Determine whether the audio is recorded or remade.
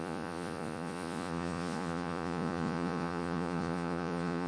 remade